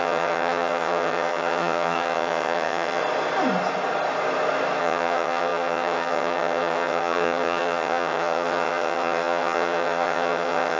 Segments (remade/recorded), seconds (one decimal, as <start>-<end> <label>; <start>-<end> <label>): 0.0-3.0 remade; 3.0-4.8 recorded; 4.8-10.8 remade